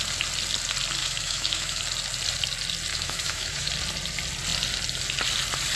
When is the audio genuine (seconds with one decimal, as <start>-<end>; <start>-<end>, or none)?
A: 0.0-1.0; 1.8-2.9; 3.7-5.8